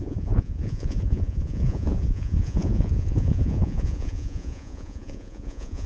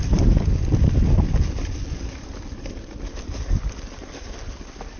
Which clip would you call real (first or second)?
second